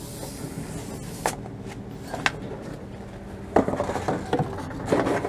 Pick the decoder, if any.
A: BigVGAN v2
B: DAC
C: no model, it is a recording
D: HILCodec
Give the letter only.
C